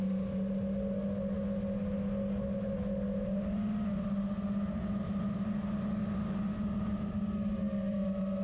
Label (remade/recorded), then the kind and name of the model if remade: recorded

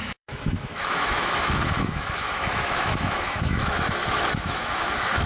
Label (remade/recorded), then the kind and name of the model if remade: remade, autoencoder, DAC-VAE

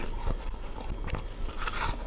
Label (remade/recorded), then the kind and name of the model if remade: recorded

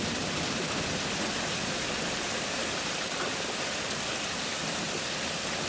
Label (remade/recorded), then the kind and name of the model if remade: recorded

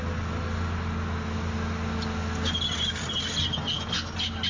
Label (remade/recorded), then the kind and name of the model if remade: recorded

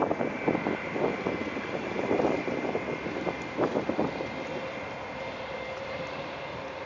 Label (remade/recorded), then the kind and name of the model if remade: recorded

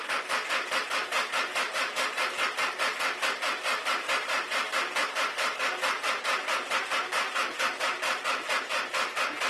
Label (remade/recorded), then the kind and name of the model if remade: recorded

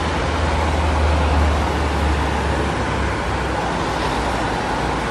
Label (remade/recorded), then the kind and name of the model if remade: recorded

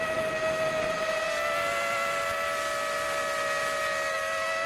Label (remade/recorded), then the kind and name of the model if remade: recorded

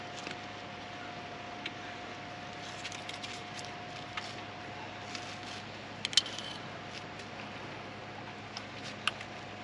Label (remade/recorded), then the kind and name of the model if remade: recorded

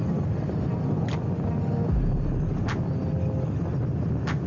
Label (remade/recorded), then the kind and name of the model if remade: recorded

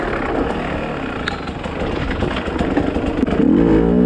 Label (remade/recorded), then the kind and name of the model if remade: recorded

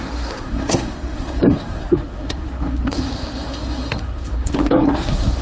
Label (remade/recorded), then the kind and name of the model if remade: remade, codec, SNAC